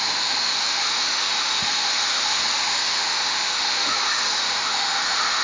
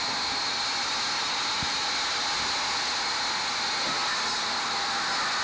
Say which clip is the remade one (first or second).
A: first